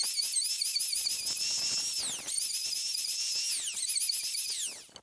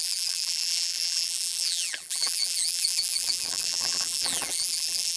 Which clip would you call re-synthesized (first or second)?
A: second